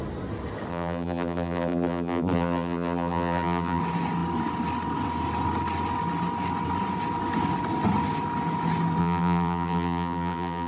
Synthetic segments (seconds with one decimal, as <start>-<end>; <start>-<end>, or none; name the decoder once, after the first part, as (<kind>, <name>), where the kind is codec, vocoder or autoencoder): 0.7-3.8 (vocoder, BigVGAN v2); 9.0-10.7